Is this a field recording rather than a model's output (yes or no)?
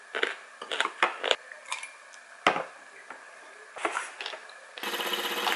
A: yes